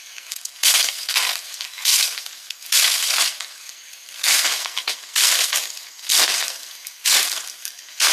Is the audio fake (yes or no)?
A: yes